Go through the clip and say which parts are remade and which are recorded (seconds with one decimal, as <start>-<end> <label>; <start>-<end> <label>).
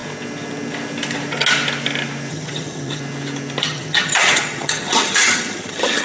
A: 0.0-2.3 recorded; 2.3-3.0 remade; 3.0-3.6 recorded; 3.6-6.0 remade